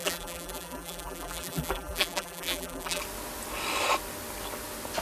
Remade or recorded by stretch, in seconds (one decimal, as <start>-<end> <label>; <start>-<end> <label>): 0.0-3.0 remade; 3.0-5.0 recorded